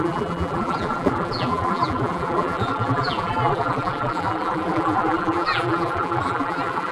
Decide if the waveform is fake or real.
fake